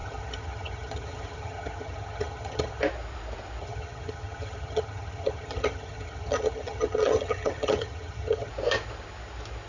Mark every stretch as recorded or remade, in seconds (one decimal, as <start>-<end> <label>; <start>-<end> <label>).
0.0-2.8 remade; 2.8-3.6 recorded; 3.6-8.5 remade; 8.5-9.7 recorded